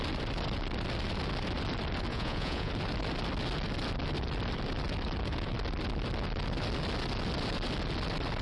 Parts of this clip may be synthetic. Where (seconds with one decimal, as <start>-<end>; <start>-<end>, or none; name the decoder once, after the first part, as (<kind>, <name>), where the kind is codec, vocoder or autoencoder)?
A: 2.1-2.7 (vocoder, Vocos)